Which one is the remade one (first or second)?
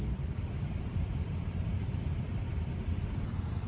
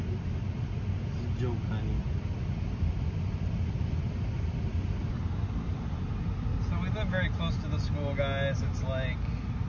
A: first